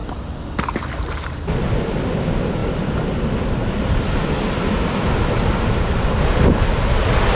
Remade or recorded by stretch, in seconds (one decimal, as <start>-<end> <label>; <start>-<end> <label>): 0.0-7.4 recorded